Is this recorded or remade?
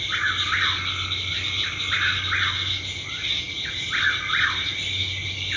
recorded